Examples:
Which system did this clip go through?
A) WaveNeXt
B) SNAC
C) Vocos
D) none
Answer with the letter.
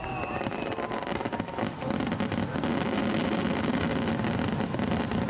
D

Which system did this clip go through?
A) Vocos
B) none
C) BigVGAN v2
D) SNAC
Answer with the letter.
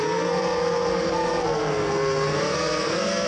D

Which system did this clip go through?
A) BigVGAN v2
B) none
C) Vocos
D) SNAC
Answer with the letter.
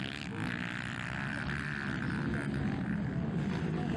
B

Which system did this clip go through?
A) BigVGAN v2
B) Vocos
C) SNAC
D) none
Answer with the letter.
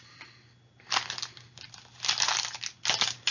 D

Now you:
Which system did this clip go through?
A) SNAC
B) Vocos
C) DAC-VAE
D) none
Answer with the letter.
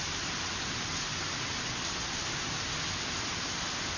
D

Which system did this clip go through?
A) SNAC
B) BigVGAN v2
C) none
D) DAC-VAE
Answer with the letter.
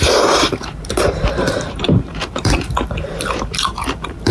B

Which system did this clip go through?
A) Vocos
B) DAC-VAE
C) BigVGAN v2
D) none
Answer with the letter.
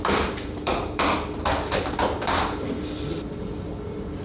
C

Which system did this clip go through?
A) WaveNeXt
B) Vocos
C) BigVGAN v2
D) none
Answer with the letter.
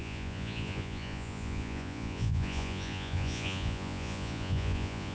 B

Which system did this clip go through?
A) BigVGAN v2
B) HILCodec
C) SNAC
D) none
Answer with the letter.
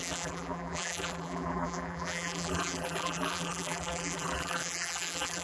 A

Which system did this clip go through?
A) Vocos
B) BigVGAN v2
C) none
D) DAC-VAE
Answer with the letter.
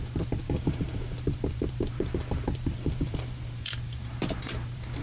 B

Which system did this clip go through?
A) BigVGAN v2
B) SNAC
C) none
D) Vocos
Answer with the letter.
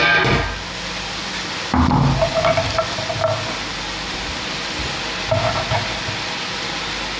C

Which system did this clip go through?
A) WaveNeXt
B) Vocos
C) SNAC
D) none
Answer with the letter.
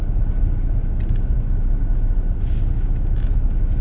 D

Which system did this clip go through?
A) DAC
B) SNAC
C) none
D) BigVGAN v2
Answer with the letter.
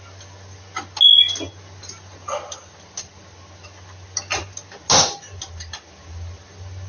C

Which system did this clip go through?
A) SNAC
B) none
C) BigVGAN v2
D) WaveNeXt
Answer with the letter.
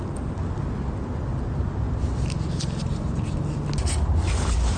B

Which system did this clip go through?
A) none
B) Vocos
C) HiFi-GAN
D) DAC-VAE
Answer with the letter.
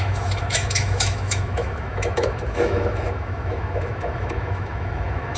D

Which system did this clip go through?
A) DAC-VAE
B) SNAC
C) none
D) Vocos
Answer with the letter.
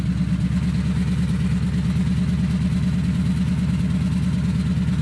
C